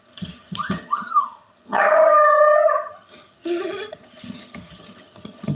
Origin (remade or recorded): remade